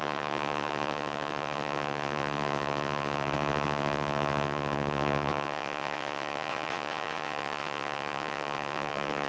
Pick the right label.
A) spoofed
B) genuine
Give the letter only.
A